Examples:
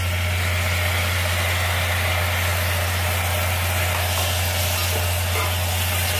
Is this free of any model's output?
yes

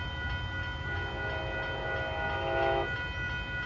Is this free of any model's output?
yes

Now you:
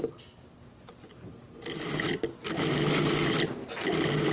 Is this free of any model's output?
yes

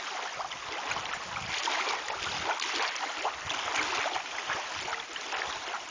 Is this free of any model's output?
yes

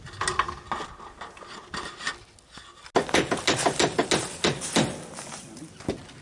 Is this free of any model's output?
yes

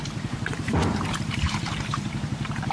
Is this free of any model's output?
no